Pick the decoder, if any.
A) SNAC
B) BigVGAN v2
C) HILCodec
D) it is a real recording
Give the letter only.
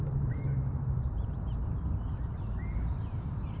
B